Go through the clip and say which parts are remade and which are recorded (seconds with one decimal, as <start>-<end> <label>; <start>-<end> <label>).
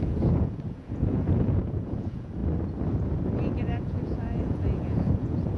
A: 0.0-2.4 remade; 2.4-3.6 recorded; 3.6-5.6 remade